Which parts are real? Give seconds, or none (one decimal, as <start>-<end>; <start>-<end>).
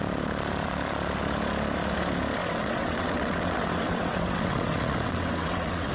0.0-2.4